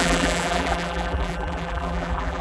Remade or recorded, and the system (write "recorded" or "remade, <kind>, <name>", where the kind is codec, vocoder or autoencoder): remade, vocoder, BigVGAN v2